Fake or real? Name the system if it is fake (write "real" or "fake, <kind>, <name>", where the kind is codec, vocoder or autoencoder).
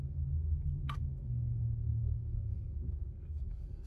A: fake, codec, SNAC